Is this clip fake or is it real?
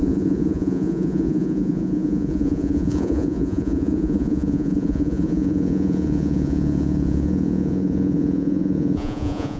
fake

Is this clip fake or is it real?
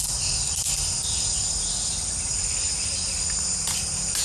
real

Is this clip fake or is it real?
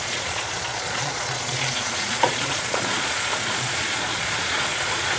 fake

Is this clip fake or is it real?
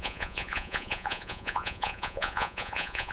fake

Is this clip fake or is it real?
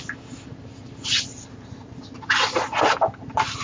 real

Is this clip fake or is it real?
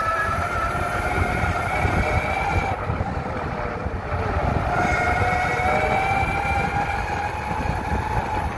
real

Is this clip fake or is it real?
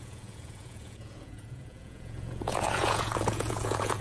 fake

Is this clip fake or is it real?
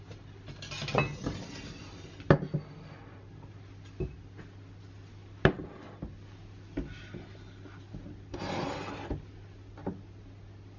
real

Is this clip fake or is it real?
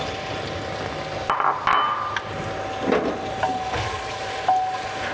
real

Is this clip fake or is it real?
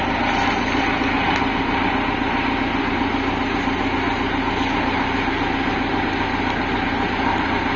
real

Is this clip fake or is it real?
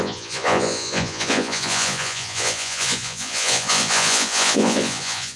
fake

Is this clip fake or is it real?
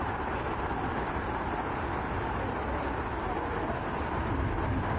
real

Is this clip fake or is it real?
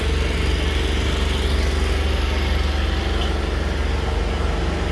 real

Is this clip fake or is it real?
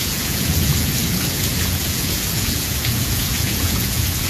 fake